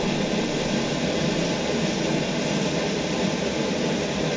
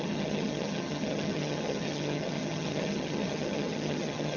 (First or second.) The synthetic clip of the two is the second